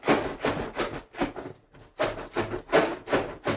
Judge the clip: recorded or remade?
recorded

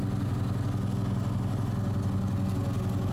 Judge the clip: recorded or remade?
recorded